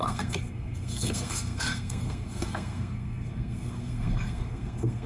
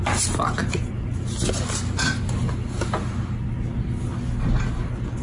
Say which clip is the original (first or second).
second